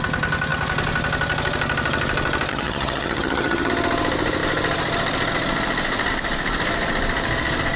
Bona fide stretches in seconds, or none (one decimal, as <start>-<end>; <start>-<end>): 0.0-2.5; 3.7-7.8